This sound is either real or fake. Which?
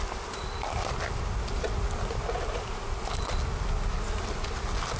real